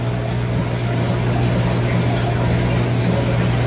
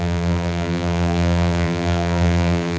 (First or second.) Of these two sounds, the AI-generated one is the second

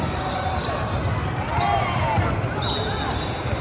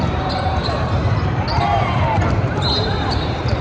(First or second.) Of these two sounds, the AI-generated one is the second